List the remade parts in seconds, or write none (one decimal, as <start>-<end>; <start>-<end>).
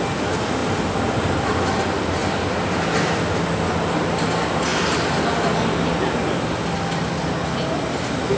none